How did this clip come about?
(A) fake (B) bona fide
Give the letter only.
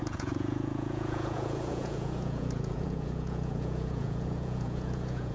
A